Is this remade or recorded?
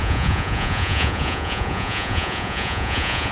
remade